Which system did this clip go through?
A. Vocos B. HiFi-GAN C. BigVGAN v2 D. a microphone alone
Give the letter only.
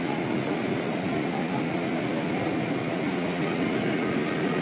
A